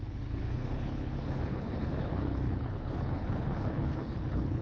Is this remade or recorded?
remade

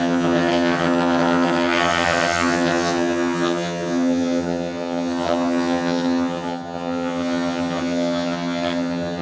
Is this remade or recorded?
remade